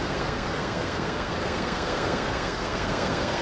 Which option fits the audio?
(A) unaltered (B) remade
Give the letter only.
B